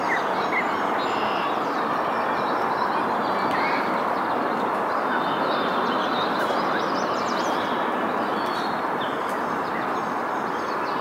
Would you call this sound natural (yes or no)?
yes